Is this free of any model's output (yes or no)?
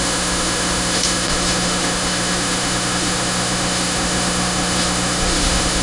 no